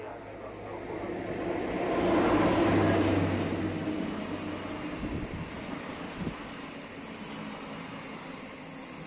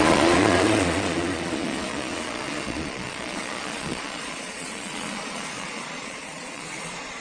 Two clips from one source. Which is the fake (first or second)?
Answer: second